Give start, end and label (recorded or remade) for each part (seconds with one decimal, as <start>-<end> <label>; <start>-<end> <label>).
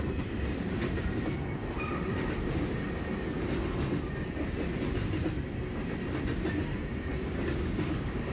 0.0-7.1 recorded; 7.1-8.3 remade